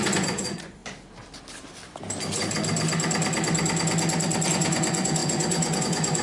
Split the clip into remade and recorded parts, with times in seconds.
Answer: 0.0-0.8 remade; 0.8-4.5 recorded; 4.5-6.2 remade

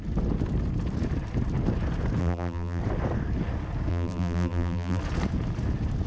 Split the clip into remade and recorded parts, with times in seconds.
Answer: 0.0-2.2 recorded; 2.2-2.8 remade; 2.8-3.9 recorded; 3.9-5.0 remade; 5.0-6.1 recorded

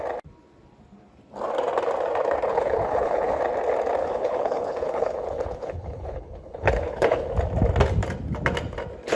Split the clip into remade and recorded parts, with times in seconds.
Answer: 0.0-2.5 recorded; 2.5-3.4 remade; 3.4-4.0 recorded; 4.0-7.3 remade; 7.3-9.2 recorded

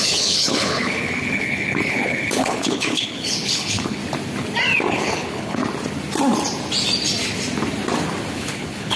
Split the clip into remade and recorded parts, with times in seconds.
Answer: 0.0-4.0 remade; 4.0-4.9 recorded; 4.9-5.6 remade; 5.6-8.3 recorded; 8.3-9.0 remade

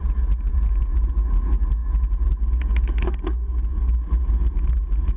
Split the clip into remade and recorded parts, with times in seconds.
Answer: 0.0-0.5 recorded; 0.5-1.1 remade; 1.1-5.2 recorded

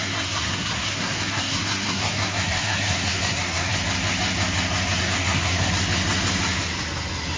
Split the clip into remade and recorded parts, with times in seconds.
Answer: 0.0-3.8 remade; 3.8-5.0 recorded; 5.0-5.7 remade; 5.7-7.4 recorded